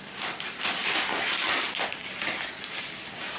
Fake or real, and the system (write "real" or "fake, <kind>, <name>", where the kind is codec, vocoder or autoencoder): real